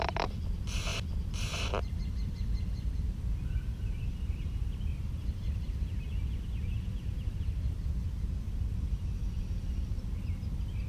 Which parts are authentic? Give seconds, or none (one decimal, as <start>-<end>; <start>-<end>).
none